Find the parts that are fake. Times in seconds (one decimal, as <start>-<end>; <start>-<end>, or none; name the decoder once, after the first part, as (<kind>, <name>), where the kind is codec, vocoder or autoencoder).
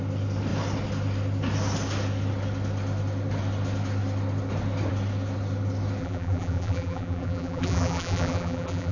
6.0-8.9 (vocoder, BigVGAN v2)